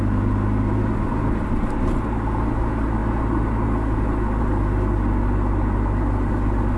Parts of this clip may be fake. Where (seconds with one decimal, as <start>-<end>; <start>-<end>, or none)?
none